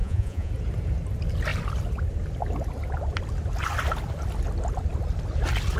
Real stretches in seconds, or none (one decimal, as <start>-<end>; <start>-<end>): 0.5-5.8